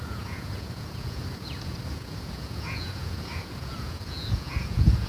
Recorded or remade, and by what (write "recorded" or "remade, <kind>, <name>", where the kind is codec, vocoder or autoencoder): remade, vocoder, Vocos